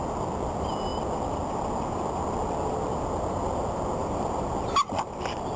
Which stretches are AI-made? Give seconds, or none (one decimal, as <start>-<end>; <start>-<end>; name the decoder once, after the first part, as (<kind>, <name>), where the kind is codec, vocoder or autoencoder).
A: 4.0-4.5 (vocoder, BigVGAN v2)